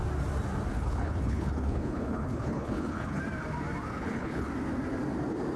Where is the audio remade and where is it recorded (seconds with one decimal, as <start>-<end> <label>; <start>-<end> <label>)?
0.0-0.7 recorded; 0.7-3.2 remade; 3.2-3.9 recorded; 3.9-4.5 remade; 4.5-5.6 recorded